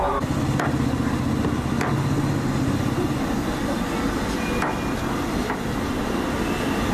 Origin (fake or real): real